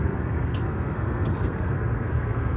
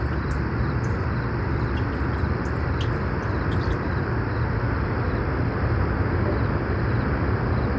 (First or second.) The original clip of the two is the second